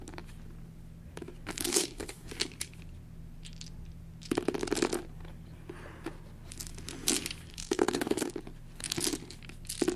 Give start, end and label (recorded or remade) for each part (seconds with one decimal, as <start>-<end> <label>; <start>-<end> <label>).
0.0-1.7 recorded; 1.7-2.3 remade; 2.3-7.5 recorded; 7.5-8.3 remade; 8.3-10.0 recorded